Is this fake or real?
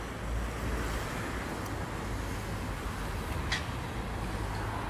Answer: real